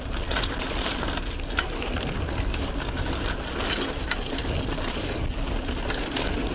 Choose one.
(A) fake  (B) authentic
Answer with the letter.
B